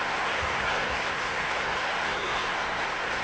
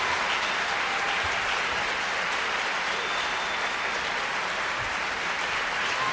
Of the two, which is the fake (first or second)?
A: first